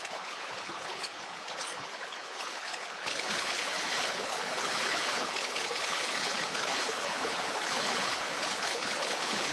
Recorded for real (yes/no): no